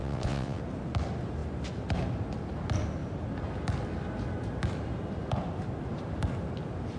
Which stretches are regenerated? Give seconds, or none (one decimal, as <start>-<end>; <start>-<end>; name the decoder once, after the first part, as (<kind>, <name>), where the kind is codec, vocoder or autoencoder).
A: 0.0-0.6 (vocoder, WaveNeXt)